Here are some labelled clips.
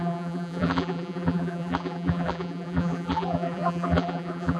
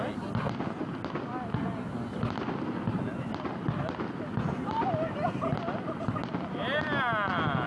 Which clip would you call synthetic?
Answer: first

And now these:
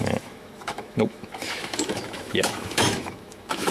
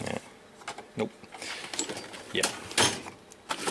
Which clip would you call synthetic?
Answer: first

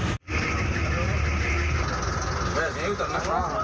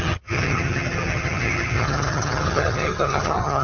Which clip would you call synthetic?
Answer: second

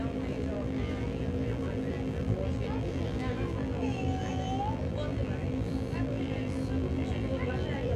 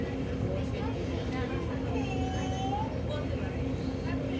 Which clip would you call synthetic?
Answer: first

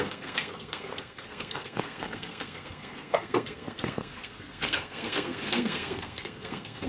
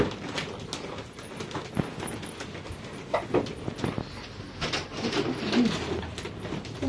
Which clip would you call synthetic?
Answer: first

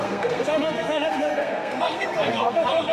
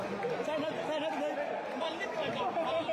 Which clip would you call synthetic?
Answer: first